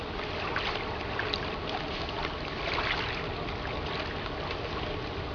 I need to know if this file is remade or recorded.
recorded